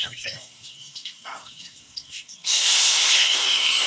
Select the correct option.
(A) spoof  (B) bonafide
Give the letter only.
A